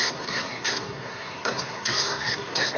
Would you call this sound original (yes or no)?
no